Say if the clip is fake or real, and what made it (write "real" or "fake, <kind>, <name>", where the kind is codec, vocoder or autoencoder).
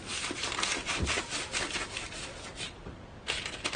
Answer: real